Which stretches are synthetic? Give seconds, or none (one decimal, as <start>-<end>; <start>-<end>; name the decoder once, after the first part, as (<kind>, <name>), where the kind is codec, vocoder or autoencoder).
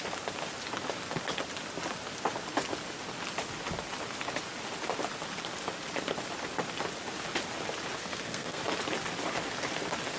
8.0-8.6 (codec, SNAC)